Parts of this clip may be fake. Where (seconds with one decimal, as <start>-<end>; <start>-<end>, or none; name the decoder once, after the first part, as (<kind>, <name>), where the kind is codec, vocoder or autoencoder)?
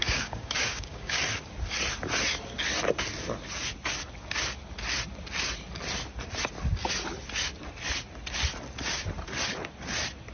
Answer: 0.0-1.2 (codec, DAC)